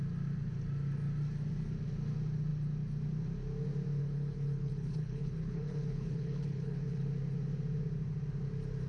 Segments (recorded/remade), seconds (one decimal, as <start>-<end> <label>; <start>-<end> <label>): 0.0-4.0 recorded; 4.0-7.1 remade; 7.1-8.9 recorded